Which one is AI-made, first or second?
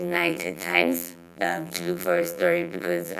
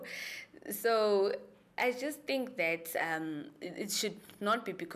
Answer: first